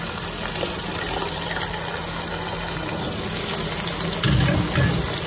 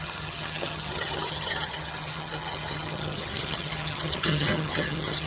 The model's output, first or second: second